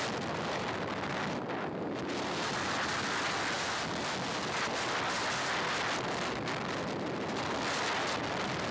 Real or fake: real